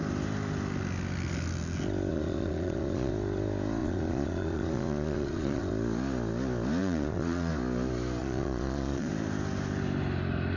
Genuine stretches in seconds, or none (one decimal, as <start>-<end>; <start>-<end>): 0.0-2.1; 3.1-3.8; 5.7-6.8; 7.5-8.2; 9.1-10.6